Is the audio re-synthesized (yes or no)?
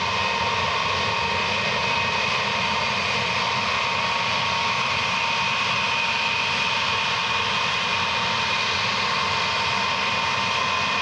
no